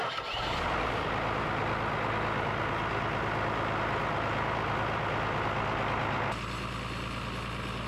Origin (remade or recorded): recorded